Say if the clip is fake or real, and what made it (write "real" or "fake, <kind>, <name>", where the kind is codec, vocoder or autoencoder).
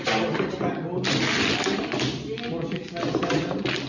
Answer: real